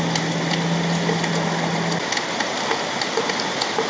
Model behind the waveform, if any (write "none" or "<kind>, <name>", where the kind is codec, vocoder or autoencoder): none